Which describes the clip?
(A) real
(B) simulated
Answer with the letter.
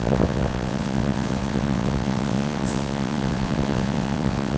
B